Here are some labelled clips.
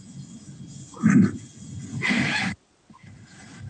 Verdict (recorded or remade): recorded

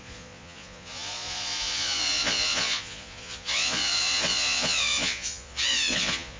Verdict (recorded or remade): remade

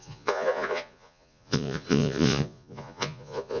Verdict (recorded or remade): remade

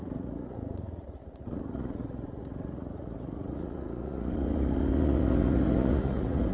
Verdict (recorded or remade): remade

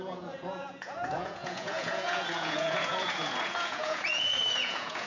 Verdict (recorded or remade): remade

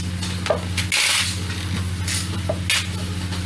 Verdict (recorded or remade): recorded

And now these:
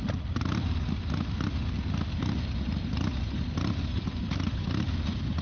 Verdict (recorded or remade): recorded